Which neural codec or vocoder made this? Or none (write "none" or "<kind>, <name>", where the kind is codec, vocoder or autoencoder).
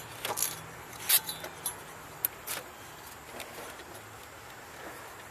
none